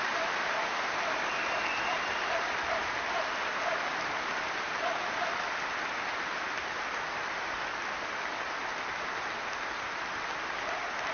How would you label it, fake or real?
real